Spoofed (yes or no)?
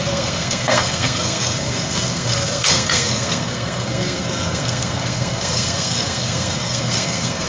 yes